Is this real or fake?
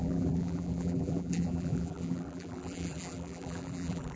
fake